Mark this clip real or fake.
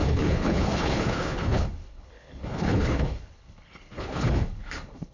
fake